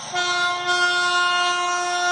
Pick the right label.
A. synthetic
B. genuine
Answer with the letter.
B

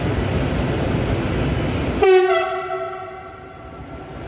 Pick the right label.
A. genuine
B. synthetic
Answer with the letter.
A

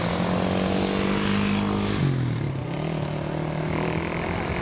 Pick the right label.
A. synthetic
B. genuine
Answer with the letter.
B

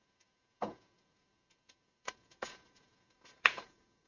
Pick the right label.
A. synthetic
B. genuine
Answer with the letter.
A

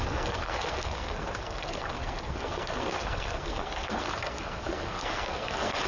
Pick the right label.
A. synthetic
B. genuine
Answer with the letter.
A